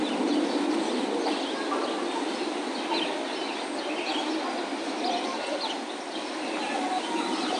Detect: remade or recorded recorded